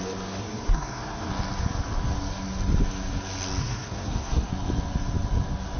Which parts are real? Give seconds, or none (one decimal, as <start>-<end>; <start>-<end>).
0.0-0.4; 1.3-3.6; 4.5-5.8

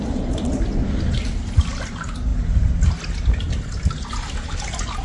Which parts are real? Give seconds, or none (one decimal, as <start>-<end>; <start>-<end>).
0.0-5.0

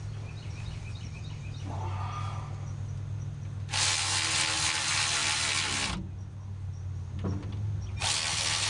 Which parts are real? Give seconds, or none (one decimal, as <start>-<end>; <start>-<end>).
0.0-8.7